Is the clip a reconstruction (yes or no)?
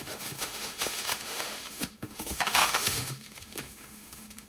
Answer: yes